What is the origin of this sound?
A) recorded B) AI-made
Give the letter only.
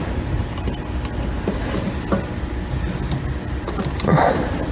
A